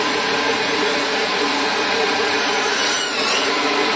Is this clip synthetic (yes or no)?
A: yes